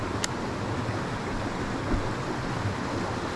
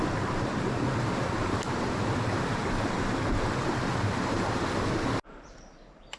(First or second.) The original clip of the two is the first